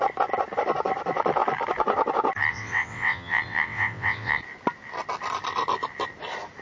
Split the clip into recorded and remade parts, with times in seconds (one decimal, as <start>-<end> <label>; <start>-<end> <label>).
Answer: 0.0-2.5 recorded; 2.5-4.4 remade; 4.4-6.6 recorded